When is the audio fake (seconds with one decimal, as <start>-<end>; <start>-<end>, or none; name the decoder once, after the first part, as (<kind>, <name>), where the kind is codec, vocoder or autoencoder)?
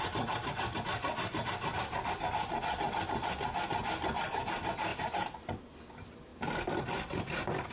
4.9-5.6 (vocoder, BigVGAN v2); 6.3-6.8